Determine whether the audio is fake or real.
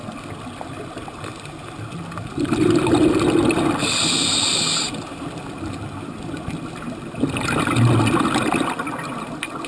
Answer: real